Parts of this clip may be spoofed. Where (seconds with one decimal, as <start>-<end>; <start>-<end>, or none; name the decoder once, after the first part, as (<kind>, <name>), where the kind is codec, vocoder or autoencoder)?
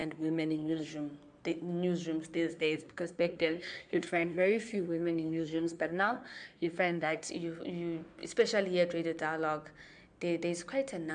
0.0-0.9 (codec, SNAC); 2.5-7.3